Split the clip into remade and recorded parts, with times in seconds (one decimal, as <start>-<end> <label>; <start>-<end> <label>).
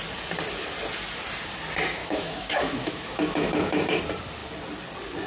0.0-2.0 recorded; 2.0-4.0 remade; 4.0-5.3 recorded